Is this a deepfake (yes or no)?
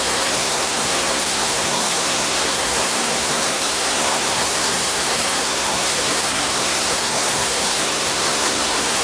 yes